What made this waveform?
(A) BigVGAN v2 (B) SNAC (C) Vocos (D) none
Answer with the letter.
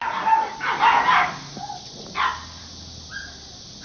D